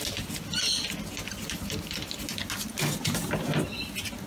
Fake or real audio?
real